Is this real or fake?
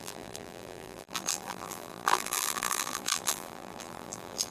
fake